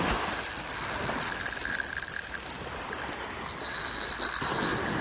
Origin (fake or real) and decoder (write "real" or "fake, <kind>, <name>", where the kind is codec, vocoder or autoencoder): real